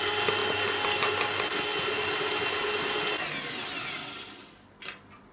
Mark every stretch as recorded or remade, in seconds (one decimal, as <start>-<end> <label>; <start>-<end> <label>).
0.0-5.3 recorded